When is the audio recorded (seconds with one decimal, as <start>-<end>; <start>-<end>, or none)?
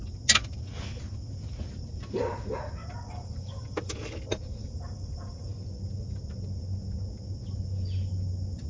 0.0-2.8; 4.1-4.6; 5.5-8.7